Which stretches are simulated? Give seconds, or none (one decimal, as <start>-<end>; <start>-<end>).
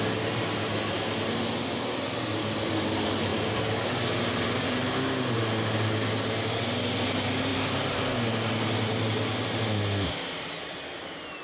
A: 3.3-3.8; 7.5-8.0